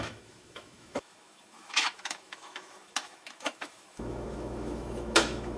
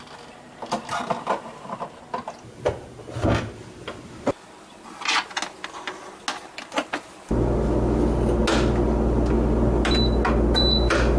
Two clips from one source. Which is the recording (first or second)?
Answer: second